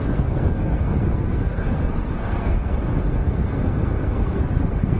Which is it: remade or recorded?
remade